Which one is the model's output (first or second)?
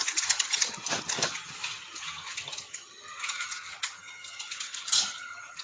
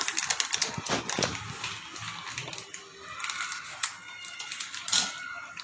first